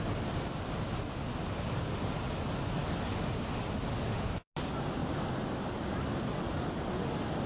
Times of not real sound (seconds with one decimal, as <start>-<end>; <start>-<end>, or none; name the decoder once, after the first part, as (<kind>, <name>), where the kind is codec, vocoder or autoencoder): none